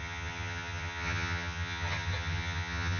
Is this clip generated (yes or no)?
yes